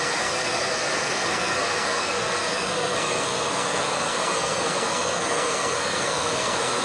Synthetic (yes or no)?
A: yes